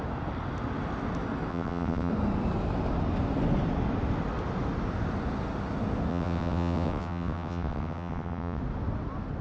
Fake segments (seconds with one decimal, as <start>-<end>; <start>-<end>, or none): 1.5-2.1; 6.1-8.6